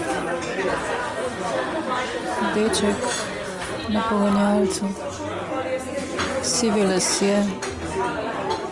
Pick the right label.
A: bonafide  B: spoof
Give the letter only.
A